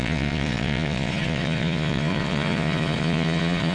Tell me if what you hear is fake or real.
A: fake